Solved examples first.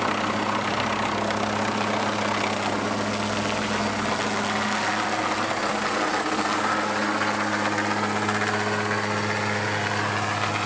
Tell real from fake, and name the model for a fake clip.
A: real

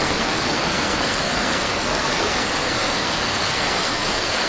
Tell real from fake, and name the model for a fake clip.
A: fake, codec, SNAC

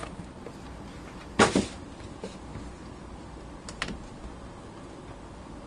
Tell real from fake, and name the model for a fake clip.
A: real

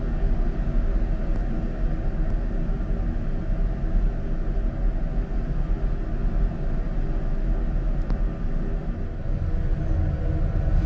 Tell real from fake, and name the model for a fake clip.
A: real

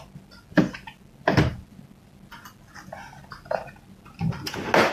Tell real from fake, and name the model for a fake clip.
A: real